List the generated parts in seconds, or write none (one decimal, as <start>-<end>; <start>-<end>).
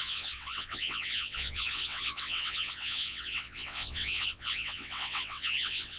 0.0-6.0